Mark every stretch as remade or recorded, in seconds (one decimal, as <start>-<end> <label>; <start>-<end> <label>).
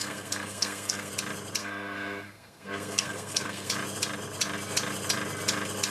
0.0-1.1 remade; 1.1-1.6 recorded; 1.6-3.7 remade; 3.7-5.9 recorded